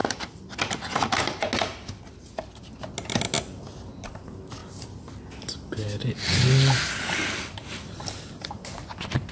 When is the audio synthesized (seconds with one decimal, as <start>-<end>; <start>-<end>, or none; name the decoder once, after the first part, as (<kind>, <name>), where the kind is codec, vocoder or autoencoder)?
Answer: none